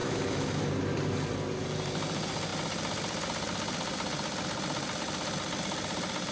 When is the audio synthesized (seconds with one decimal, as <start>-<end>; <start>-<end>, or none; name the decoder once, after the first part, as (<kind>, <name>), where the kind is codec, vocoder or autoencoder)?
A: 0.0-0.6 (autoencoder, DAC-VAE)